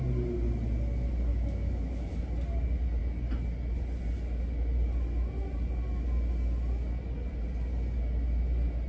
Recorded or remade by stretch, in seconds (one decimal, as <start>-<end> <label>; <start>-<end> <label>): 0.0-1.3 recorded; 1.3-2.2 remade; 2.2-8.9 recorded